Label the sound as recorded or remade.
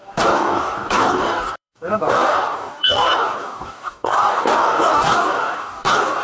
remade